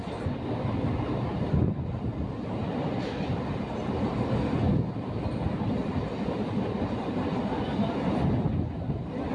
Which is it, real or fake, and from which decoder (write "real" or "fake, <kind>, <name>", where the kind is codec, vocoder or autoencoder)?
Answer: real